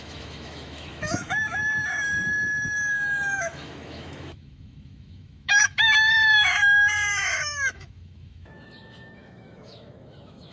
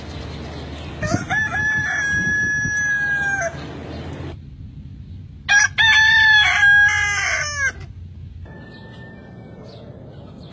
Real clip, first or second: second